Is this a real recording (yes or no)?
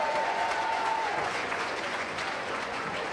no